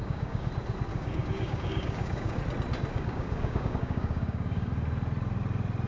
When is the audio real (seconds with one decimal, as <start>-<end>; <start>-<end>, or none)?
0.5-0.9; 2.4-2.9; 4.7-5.9